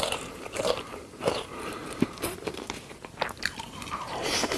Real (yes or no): no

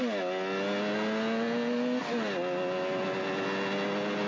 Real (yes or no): yes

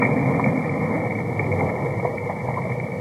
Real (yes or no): yes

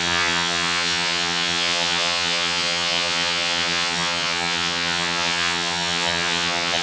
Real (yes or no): no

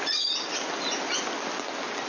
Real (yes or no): yes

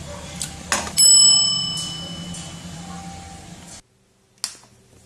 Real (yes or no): yes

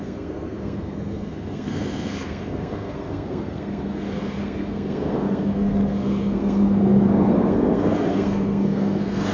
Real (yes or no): no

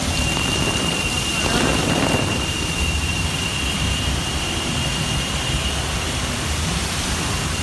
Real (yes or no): no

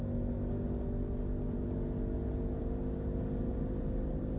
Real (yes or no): yes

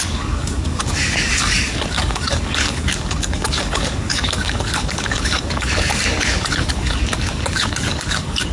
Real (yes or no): no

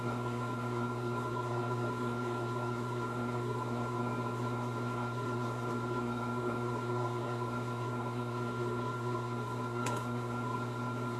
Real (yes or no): no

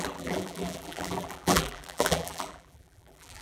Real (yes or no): no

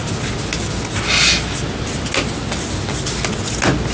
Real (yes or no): yes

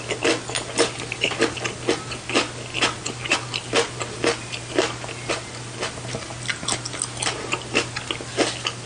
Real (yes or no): yes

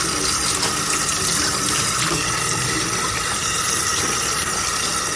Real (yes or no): yes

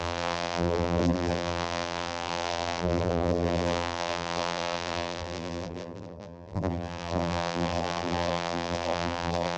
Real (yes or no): no